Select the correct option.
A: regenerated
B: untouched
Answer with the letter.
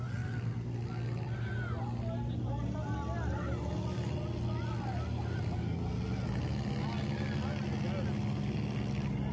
B